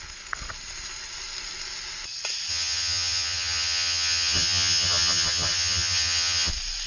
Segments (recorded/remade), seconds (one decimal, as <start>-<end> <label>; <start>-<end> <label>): 0.0-2.5 recorded; 2.5-6.5 remade; 6.5-6.9 recorded